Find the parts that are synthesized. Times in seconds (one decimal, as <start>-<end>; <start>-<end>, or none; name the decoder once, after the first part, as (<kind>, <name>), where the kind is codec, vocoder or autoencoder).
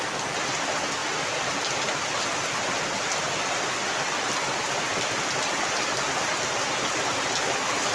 none